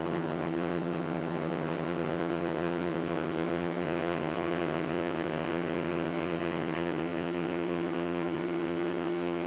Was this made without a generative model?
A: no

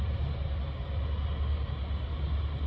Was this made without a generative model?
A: yes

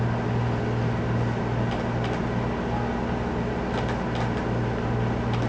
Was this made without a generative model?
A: yes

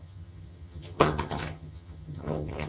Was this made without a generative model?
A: no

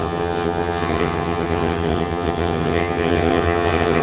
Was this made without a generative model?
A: no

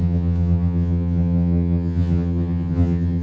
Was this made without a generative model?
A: no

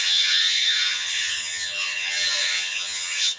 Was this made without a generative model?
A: no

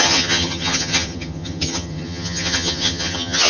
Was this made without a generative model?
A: no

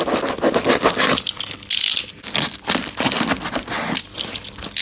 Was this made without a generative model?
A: yes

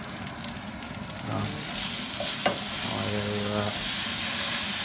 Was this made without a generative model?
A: yes